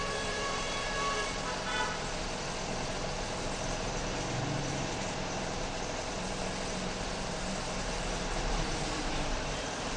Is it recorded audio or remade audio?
remade